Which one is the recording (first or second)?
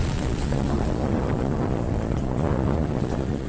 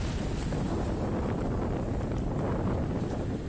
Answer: second